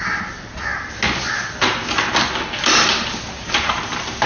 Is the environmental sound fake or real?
real